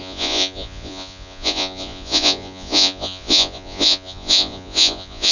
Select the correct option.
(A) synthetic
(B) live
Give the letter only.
A